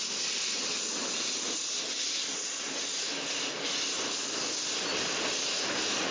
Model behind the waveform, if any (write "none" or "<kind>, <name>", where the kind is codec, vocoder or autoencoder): none